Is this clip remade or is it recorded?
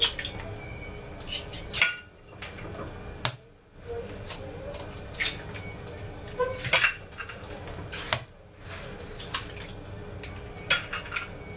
recorded